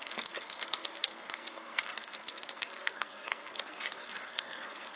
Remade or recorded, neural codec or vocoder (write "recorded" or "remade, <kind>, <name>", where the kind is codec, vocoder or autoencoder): remade, codec, SNAC